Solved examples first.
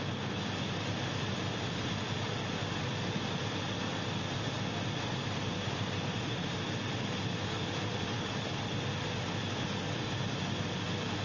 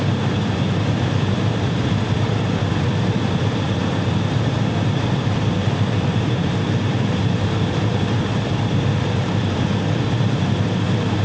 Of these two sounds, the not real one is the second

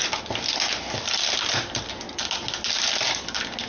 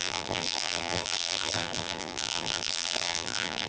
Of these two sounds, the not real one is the second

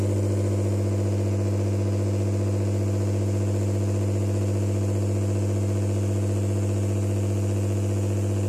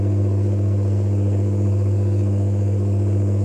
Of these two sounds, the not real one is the second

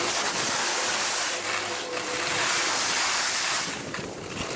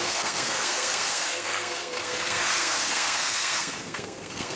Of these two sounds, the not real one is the second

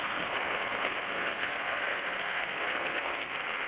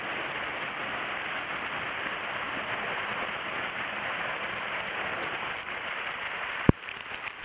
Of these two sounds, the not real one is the first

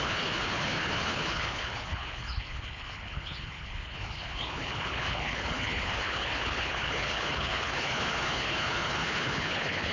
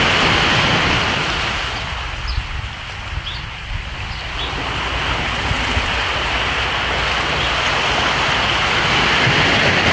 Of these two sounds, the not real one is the first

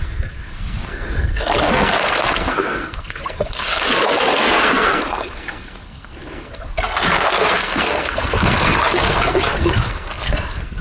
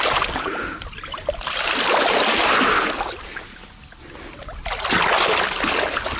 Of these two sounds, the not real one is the first